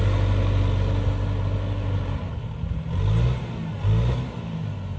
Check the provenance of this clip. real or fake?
real